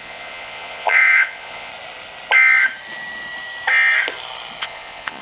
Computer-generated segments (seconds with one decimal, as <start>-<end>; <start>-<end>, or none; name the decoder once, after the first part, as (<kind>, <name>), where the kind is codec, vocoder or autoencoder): 0.0-1.7 (vocoder, Vocos); 4.6-5.2

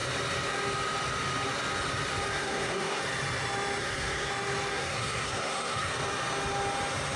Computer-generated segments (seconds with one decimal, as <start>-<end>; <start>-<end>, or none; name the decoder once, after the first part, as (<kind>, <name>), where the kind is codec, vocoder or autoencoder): 2.3-3.0 (codec, SNAC); 3.8-4.3; 4.7-5.9